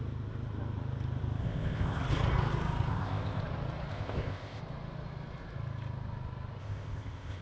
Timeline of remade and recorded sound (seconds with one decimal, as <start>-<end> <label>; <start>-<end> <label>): 0.0-1.4 recorded; 1.4-2.0 remade; 2.0-2.9 recorded; 2.9-3.4 remade; 3.4-3.9 recorded; 3.9-4.6 remade; 4.6-6.6 recorded; 6.6-7.4 remade